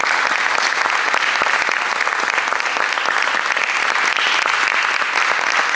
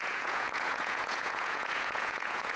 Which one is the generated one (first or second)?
second